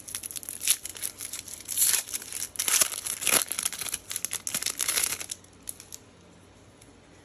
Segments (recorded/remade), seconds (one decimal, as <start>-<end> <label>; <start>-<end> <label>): 0.0-0.9 recorded; 0.9-2.6 remade; 2.6-7.2 recorded